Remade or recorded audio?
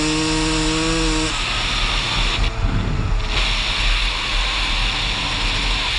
recorded